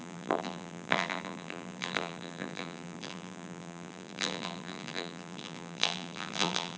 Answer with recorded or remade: remade